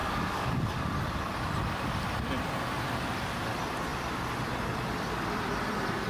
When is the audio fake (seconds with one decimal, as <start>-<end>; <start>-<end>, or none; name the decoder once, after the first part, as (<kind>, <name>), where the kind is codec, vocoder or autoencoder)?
0.0-0.8 (codec, DAC)